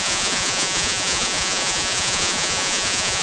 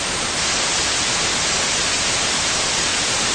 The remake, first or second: first